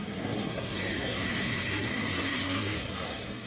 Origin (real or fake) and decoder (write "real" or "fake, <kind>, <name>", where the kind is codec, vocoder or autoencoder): fake, codec, SNAC